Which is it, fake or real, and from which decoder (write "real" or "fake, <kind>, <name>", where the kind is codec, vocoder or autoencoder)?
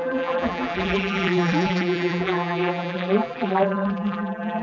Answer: fake, vocoder, BigVGAN v2